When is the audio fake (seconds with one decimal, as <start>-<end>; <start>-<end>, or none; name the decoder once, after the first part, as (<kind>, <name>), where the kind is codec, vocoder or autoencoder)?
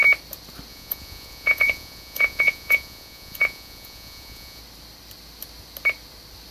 0.7-4.6 (vocoder, Vocos)